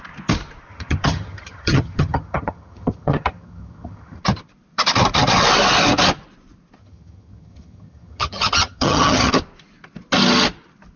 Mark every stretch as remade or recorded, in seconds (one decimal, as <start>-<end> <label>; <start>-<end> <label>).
0.0-0.7 recorded; 0.7-4.2 remade; 4.2-6.8 recorded; 6.8-9.3 remade; 9.3-11.0 recorded

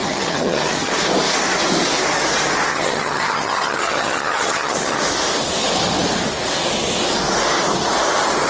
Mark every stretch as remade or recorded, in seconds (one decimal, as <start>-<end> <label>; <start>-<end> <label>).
0.0-0.9 remade; 0.9-2.7 recorded; 2.7-5.0 remade; 5.0-8.5 recorded

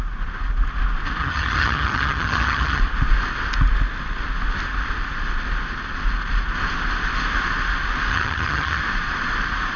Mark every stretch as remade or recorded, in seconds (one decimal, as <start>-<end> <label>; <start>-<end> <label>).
0.0-1.2 recorded; 1.2-2.8 remade; 2.8-8.1 recorded; 8.1-8.8 remade; 8.8-9.8 recorded

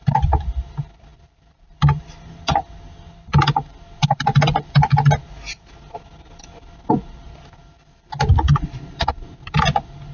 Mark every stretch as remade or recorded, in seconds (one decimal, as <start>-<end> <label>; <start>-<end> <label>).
0.0-10.1 recorded

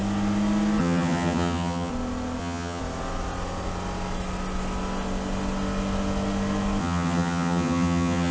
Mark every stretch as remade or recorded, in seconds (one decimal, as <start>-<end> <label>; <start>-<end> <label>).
0.0-0.8 recorded; 0.8-1.9 remade; 1.9-2.4 recorded; 2.4-2.8 remade; 2.8-6.8 recorded; 6.8-8.3 remade

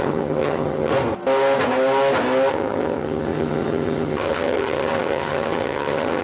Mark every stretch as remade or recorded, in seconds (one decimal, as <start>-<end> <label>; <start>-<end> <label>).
0.0-0.9 remade; 0.9-2.5 recorded; 2.5-6.2 remade

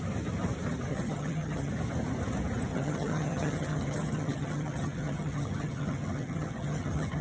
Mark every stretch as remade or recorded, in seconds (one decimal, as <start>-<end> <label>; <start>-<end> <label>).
0.0-0.9 recorded; 0.9-1.7 remade; 1.7-2.7 recorded; 2.7-7.2 remade